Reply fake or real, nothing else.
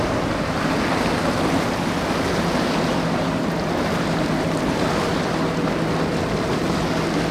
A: real